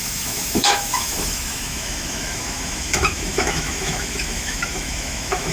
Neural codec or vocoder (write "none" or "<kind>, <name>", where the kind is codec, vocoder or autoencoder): autoencoder, DAC-VAE